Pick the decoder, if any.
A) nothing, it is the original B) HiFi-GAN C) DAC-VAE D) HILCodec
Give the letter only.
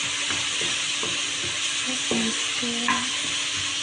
A